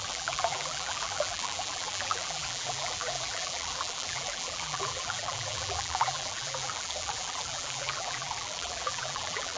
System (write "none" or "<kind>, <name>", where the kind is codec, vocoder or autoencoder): vocoder, BigVGAN v2